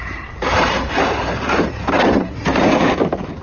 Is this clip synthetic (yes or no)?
yes